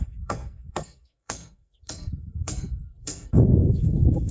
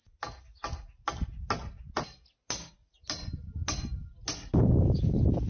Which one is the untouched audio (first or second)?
second